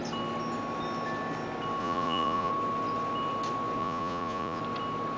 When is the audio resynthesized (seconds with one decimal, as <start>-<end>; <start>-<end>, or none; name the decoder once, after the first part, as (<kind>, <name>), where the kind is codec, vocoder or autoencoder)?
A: 1.8-2.5 (vocoder, Vocos); 3.8-4.6

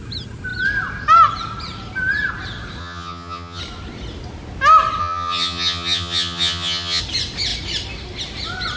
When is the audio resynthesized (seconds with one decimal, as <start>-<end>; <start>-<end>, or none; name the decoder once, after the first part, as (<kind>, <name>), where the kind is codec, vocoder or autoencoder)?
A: 2.8-3.6 (vocoder, HiFi-GAN); 5.0-7.0

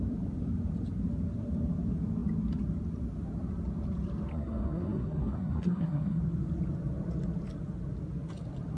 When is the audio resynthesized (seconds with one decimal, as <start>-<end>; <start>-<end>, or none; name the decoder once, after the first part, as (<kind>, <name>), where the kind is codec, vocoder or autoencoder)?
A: 4.3-6.2 (codec, SNAC)

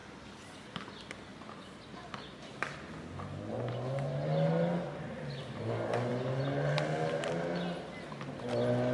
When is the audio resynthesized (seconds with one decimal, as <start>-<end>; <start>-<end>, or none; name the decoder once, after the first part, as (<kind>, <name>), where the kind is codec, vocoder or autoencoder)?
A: 0.0-0.7 (vocoder, BigVGAN v2); 1.3-1.8

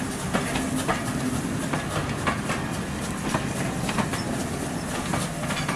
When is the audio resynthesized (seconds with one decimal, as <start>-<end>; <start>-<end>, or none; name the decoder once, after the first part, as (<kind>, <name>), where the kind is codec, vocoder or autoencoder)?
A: none